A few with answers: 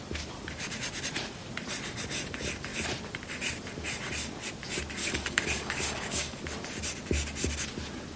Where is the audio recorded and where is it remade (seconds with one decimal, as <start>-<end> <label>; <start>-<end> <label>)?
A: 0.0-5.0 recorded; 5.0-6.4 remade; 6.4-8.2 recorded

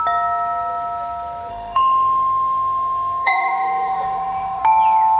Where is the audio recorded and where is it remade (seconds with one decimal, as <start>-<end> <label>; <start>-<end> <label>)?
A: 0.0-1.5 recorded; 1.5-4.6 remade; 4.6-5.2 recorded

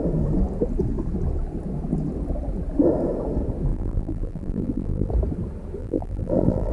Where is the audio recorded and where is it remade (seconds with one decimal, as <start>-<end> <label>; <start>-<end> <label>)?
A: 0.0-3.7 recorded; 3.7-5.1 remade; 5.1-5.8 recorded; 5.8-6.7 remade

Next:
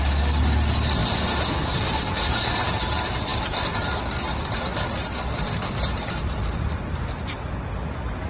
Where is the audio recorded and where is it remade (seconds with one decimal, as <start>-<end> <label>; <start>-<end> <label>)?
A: 0.0-8.3 recorded

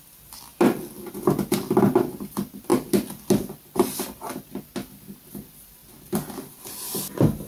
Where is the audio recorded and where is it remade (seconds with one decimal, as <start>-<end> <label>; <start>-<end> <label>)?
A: 0.0-0.5 recorded; 0.5-1.1 remade; 1.1-2.7 recorded; 2.7-4.6 remade; 4.6-5.8 recorded; 5.8-6.6 remade; 6.6-7.5 recorded

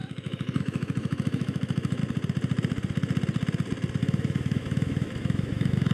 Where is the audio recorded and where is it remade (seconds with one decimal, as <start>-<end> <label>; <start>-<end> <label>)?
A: 0.0-2.0 remade; 2.0-4.0 recorded; 4.0-5.9 remade

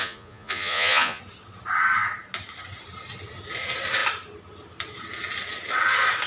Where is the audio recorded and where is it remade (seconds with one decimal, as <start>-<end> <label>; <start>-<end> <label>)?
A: 0.0-1.2 remade; 1.2-6.3 recorded